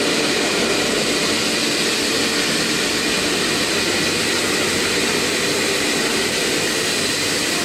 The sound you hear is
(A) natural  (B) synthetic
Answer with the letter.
A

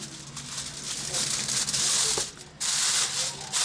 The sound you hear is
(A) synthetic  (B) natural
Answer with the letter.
B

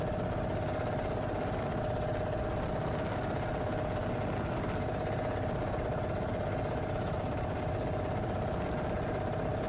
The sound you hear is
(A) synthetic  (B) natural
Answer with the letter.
B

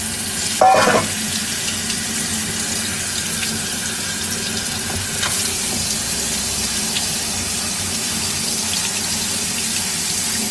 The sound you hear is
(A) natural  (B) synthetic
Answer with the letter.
A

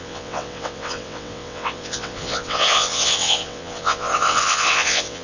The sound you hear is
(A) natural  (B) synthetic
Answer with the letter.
B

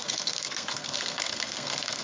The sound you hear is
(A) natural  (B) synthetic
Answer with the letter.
B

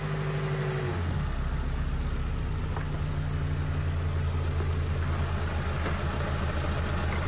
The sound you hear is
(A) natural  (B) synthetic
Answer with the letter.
A